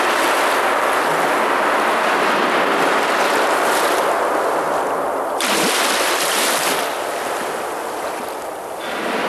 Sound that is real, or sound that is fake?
real